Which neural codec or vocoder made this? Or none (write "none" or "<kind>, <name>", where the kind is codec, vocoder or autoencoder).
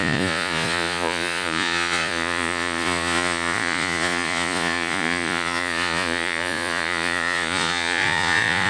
vocoder, Vocos